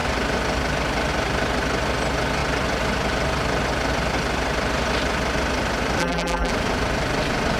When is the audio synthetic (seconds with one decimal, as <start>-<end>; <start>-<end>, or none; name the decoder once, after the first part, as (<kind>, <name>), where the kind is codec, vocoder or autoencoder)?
6.0-6.5 (vocoder, BigVGAN v2)